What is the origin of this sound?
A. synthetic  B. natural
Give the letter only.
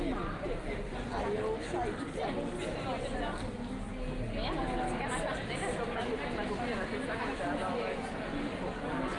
B